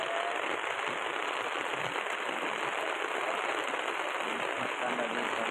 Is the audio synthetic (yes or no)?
no